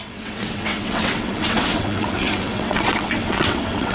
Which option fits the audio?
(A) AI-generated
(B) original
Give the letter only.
A